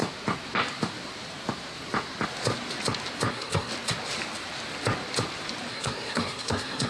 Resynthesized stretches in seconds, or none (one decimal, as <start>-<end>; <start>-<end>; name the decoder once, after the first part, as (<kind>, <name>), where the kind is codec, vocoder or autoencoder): 3.3-3.7 (codec, SNAC); 5.7-6.9